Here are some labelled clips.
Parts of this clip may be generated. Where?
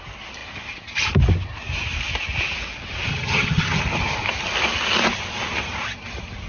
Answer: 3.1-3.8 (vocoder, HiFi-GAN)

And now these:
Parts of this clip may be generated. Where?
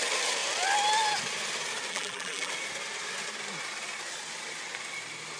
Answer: 1.9-2.5 (vocoder, BigVGAN v2)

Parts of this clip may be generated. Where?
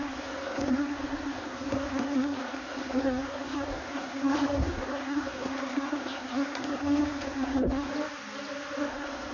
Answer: 0.0-7.9 (codec, SNAC); 8.9-9.3